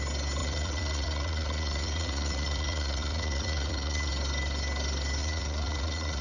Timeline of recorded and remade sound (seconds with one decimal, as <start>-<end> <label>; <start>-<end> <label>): 0.0-0.4 recorded; 0.4-4.1 remade; 4.1-5.2 recorded; 5.2-6.2 remade